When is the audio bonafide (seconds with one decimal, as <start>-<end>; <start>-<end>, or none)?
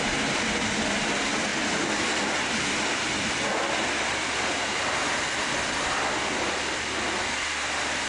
0.0-8.1